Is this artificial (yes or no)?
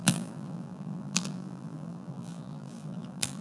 yes